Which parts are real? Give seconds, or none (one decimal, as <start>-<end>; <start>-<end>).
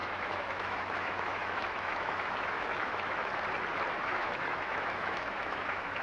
3.3-3.9